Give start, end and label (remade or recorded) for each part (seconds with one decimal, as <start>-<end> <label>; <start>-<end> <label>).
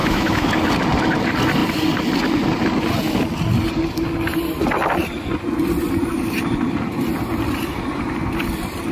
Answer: 0.0-0.5 remade; 0.5-8.9 recorded